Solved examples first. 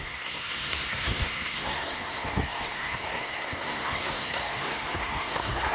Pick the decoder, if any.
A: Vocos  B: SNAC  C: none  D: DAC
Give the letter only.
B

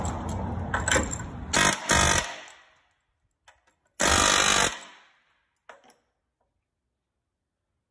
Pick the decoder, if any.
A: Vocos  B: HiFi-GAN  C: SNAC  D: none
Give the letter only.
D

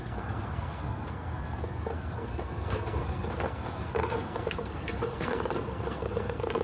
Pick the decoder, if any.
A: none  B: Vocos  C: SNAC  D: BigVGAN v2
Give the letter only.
C